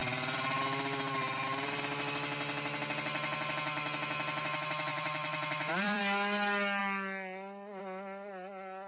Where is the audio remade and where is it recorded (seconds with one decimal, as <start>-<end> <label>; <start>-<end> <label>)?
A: 0.0-1.8 remade; 1.8-4.9 recorded; 4.9-6.0 remade; 6.0-8.9 recorded